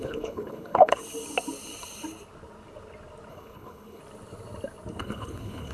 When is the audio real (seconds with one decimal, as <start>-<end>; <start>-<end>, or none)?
1.0-3.3; 4.0-5.0